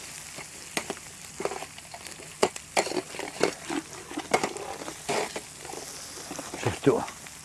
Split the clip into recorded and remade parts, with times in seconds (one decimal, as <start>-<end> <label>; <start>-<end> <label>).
0.0-7.4 recorded